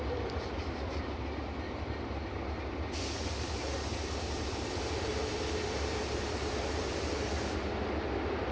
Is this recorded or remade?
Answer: recorded